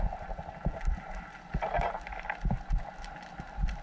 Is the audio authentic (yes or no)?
yes